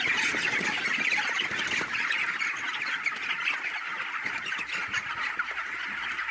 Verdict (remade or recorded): recorded